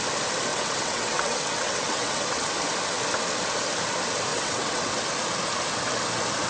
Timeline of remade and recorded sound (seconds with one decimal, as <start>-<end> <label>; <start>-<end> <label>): 0.0-0.5 recorded; 0.5-2.4 remade; 2.4-4.3 recorded; 4.3-4.9 remade; 4.9-6.5 recorded